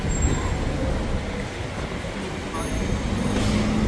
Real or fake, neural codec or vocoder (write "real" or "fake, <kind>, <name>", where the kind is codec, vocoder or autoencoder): real